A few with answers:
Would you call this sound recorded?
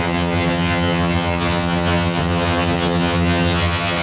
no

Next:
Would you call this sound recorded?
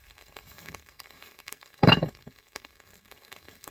no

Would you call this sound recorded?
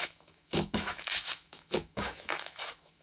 no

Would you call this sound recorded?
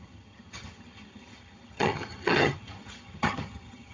no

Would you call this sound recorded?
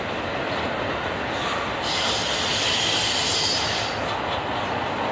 yes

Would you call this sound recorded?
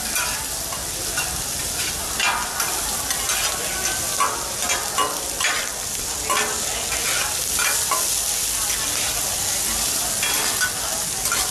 yes